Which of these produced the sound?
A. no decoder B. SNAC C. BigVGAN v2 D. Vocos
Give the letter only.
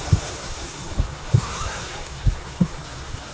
B